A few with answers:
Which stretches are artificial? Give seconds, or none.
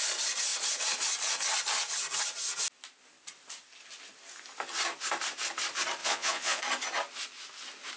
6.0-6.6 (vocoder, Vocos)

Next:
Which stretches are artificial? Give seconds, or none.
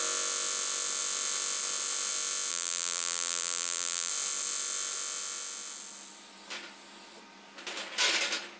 2.5-4.1 (vocoder, BigVGAN v2)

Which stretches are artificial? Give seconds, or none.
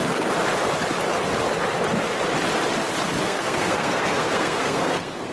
3.2-5.3 (codec, SNAC)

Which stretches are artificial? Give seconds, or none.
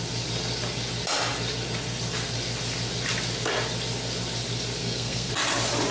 4.8-5.3 (codec, SNAC)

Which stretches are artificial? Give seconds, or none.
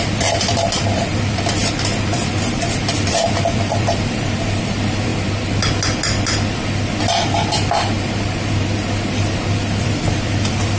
0.0-5.1 (vocoder, BigVGAN v2); 9.8-10.8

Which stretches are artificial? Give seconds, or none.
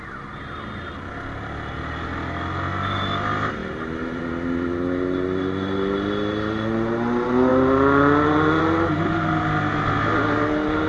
3.6-4.2 (vocoder, BigVGAN v2)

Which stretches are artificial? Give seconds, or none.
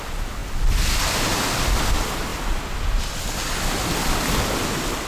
none